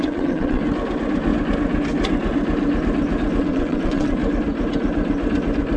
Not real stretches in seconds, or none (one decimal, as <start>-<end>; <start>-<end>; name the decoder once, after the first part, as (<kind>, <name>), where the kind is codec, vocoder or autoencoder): 0.0-0.6 (vocoder, WaveNeXt); 3.4-4.2

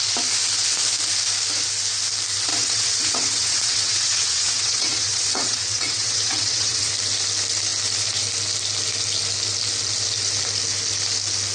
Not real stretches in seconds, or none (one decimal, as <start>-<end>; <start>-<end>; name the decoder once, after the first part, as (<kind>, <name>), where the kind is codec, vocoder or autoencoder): 2.5-6.9 (vocoder, WaveNeXt)

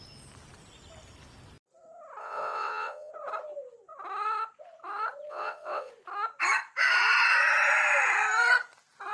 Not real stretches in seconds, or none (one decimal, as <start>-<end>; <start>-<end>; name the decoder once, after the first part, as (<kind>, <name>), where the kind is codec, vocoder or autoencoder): 2.2-3.1 (vocoder, WaveNeXt); 5.3-5.9

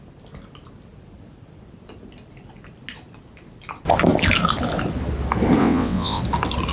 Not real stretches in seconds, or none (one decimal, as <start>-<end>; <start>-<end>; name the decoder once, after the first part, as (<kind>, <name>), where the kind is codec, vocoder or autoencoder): 5.6-6.2 (vocoder, WaveNeXt)